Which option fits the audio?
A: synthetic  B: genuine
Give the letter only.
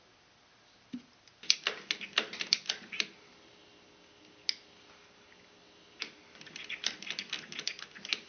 B